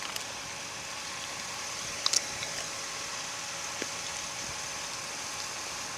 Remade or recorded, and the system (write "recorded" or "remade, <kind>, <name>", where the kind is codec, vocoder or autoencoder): recorded